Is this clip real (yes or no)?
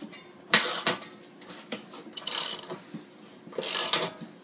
yes